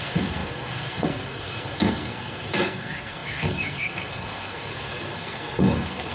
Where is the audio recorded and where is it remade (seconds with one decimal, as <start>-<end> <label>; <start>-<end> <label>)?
0.0-6.1 remade